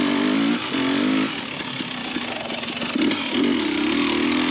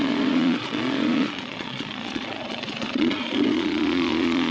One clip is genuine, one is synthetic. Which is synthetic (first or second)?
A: second